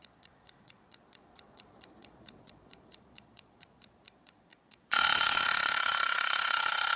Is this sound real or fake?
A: fake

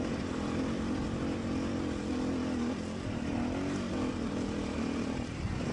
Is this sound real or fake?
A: real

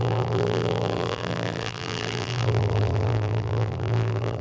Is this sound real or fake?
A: fake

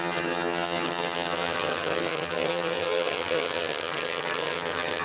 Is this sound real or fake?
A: fake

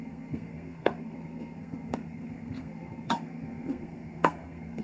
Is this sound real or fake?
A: fake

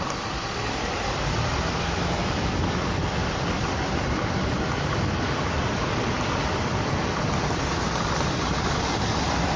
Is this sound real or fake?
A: fake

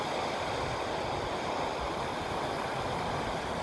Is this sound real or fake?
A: real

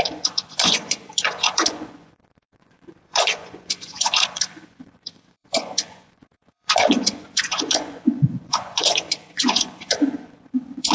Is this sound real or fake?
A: fake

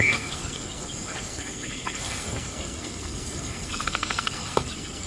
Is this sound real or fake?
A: fake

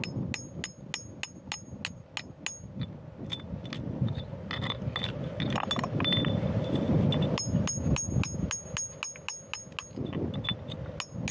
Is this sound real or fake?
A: real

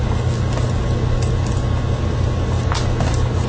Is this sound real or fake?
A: real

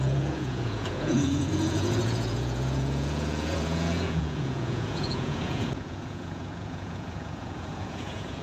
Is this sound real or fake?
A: fake